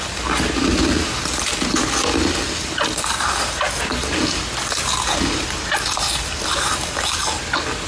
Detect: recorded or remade recorded